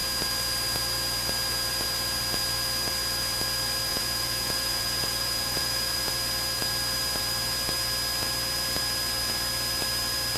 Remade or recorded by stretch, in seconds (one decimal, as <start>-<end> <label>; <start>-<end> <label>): 0.0-3.9 recorded; 3.9-6.0 remade; 6.0-10.4 recorded